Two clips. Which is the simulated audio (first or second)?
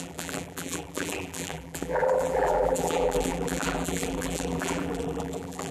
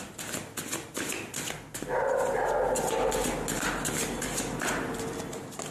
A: first